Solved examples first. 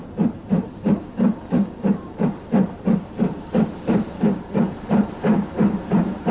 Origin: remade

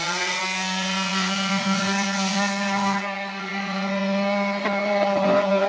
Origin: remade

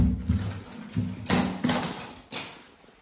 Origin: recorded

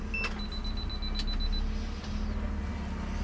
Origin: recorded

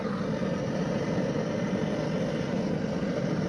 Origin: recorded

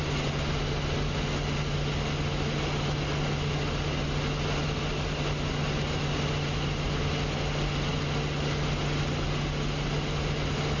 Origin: recorded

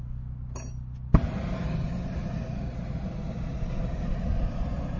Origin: recorded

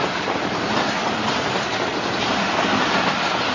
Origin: recorded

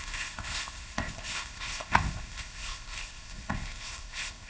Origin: remade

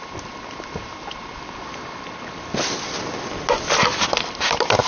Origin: recorded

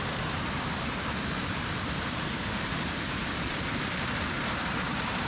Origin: remade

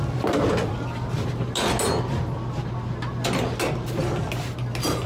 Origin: recorded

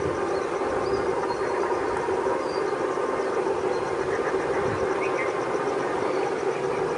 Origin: recorded